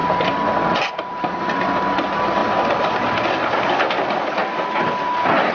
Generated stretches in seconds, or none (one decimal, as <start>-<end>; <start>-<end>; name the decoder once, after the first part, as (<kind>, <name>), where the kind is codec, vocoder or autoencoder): none

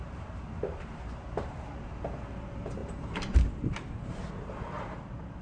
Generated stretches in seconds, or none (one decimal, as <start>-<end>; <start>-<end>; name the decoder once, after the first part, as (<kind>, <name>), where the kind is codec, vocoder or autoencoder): 0.0-5.4 (vocoder, BigVGAN v2)

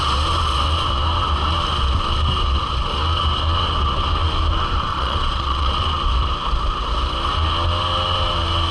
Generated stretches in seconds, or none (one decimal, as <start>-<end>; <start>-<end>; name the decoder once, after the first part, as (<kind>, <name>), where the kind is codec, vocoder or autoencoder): 4.9-5.7 (vocoder, Vocos)

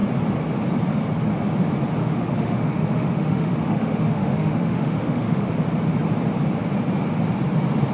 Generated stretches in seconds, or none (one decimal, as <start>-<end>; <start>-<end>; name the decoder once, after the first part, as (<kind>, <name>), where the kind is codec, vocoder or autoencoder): 2.0-5.5 (autoencoder, DAC-VAE)